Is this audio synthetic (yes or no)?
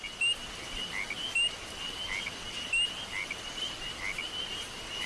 no